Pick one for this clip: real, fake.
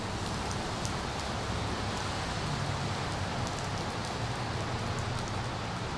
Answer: real